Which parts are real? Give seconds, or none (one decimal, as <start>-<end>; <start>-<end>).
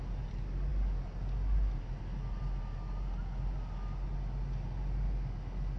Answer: 0.0-5.8